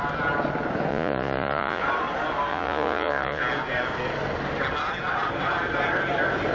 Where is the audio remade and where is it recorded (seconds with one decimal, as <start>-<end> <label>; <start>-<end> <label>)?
0.0-0.9 recorded; 0.9-1.8 remade; 1.8-2.5 recorded; 2.5-3.4 remade; 3.4-6.5 recorded